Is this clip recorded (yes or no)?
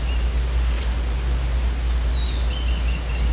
yes